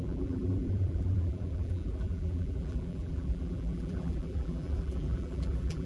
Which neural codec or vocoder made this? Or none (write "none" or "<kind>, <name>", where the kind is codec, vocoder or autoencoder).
vocoder, BigVGAN v2